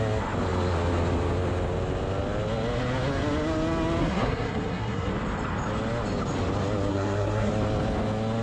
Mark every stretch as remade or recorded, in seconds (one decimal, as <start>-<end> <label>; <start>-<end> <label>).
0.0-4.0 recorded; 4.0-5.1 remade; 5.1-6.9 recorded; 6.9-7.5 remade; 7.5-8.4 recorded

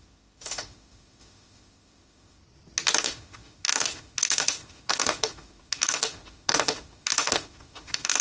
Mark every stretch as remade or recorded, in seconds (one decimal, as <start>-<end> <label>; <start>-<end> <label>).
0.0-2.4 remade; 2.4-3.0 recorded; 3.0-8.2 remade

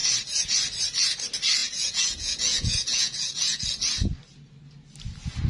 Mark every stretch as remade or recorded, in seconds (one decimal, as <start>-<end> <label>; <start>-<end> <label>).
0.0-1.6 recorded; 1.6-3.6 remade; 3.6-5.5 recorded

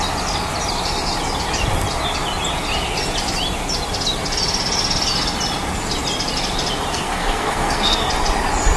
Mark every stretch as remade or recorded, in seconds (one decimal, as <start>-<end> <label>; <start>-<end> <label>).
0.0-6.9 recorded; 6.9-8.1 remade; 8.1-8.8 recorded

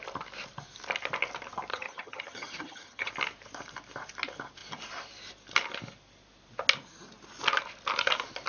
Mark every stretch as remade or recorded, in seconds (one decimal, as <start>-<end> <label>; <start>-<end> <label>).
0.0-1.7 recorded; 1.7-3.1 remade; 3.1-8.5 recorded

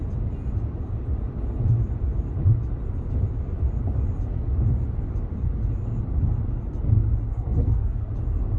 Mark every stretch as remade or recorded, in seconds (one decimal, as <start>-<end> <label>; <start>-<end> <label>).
0.0-7.3 recorded; 7.3-8.1 remade; 8.1-8.6 recorded